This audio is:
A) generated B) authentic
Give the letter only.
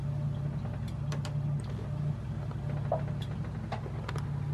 B